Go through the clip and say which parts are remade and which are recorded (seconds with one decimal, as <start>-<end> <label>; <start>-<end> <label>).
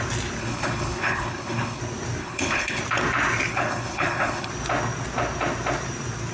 0.0-0.4 recorded; 0.4-1.8 remade; 1.8-2.2 recorded; 2.2-2.8 remade; 2.8-3.5 recorded; 3.5-4.5 remade; 4.5-6.3 recorded